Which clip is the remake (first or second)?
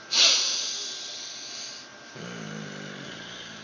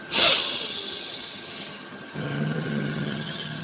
second